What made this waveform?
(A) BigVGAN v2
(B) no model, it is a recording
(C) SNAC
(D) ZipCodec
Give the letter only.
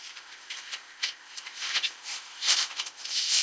D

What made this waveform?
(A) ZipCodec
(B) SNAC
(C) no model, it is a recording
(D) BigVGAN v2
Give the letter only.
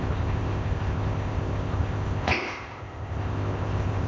A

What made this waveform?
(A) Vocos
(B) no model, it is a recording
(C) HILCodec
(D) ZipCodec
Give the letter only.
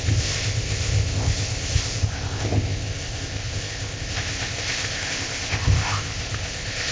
D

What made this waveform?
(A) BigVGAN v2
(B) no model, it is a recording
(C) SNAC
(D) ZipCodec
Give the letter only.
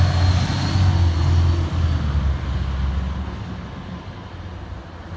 B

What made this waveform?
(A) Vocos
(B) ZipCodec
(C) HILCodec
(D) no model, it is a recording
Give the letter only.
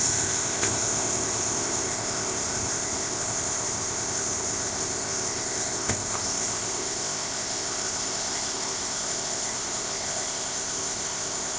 B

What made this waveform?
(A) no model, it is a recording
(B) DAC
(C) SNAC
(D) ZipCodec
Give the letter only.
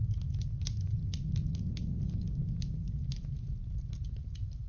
A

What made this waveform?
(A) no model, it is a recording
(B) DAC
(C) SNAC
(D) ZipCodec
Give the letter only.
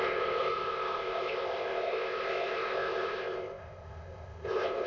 D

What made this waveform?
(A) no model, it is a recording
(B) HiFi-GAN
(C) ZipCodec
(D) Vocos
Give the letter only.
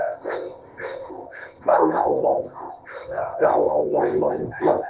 C